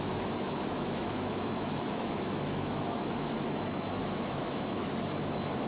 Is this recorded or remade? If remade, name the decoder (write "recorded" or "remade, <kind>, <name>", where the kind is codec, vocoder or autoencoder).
remade, autoencoder, DAC-VAE